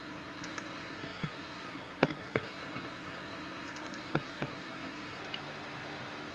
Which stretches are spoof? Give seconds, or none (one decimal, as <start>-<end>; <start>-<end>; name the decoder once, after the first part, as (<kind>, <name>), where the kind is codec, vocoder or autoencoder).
0.0-5.2 (codec, SNAC)